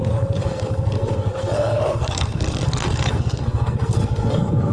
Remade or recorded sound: remade